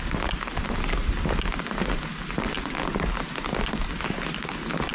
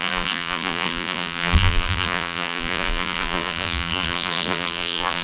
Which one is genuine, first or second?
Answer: first